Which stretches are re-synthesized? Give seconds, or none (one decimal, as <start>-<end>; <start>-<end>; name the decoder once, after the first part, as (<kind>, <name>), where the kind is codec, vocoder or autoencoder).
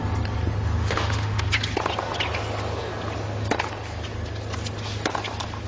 0.8-1.5 (autoencoder, DAC-VAE)